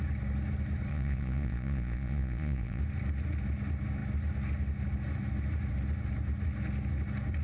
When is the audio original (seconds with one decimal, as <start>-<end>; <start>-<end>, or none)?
0.0-0.9; 2.8-7.4